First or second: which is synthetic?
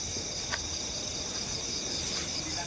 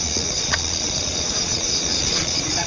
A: second